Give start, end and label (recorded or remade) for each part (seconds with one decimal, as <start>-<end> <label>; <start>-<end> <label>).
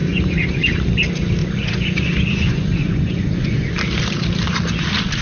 0.0-0.8 remade; 0.8-1.4 recorded; 1.4-3.7 remade; 3.7-5.2 recorded